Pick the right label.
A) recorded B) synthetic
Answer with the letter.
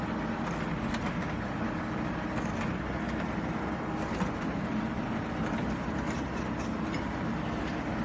A